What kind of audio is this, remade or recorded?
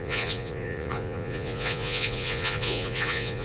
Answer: remade